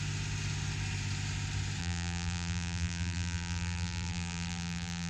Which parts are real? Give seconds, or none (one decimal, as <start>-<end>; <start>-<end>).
0.0-1.8